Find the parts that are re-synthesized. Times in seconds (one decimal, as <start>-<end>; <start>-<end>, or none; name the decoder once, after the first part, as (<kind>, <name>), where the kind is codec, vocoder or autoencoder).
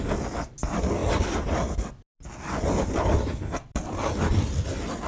none